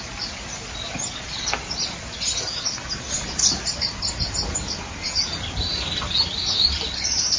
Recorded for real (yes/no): yes